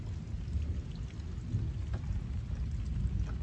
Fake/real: real